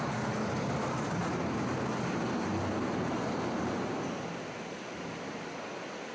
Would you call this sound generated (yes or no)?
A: no